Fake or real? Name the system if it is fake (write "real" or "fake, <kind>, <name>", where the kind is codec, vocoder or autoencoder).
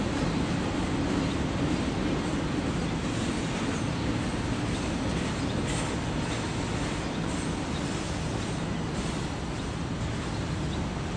real